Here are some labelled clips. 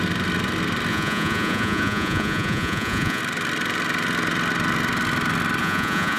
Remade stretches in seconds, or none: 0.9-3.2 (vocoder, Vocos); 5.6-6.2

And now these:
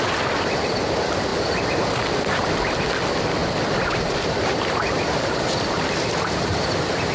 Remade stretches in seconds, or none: none

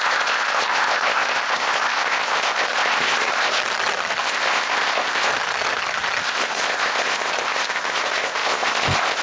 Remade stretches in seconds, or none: 0.0-3.6 (codec, ZipCodec); 4.2-5.3; 6.2-9.2